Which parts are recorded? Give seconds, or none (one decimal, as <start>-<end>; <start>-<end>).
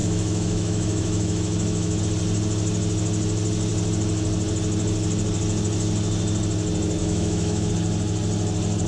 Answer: 2.0-7.0; 7.7-8.9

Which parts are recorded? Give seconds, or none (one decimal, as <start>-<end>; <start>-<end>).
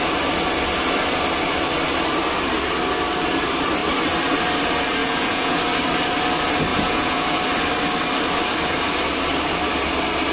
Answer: 0.0-5.0; 5.6-6.7; 7.4-10.3